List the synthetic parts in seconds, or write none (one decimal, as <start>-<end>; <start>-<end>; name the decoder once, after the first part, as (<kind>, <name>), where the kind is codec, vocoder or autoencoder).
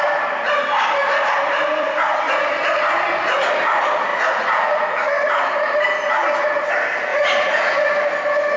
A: 4.1-5.1 (vocoder, Vocos); 7.1-7.9